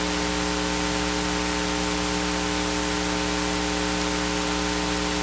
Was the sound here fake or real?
real